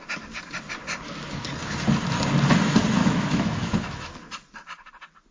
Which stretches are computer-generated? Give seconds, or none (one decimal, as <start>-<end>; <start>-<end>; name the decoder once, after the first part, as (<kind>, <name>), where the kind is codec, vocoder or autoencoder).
3.0-4.1 (autoencoder, DAC-VAE)